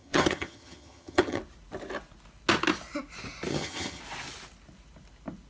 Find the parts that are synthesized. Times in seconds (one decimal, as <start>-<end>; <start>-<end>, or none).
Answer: 0.0-1.4; 3.5-4.0